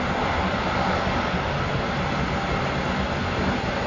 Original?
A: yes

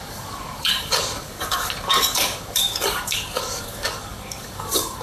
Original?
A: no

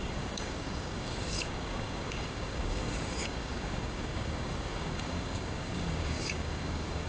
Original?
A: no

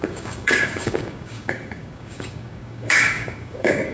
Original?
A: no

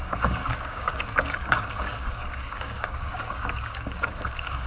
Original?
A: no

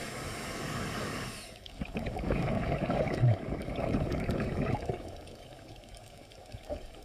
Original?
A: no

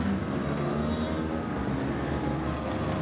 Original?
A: yes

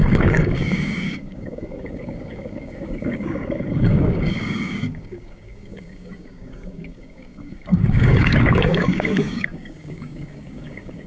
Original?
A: no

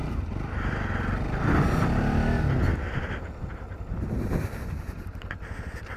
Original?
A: yes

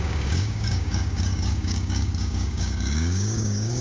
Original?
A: no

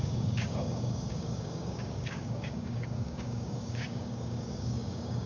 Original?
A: no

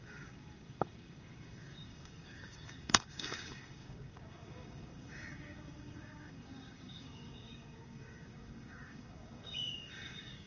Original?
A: no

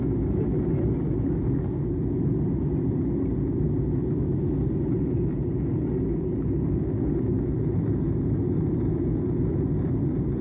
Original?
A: yes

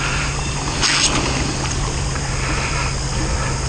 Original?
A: yes